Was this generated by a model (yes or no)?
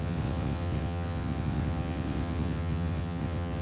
yes